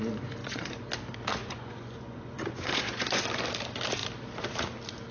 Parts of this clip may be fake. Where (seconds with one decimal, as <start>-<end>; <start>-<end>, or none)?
0.4-0.9; 1.3-3.2